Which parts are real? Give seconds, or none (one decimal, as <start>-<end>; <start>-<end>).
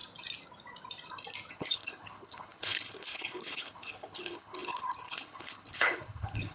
0.0-1.5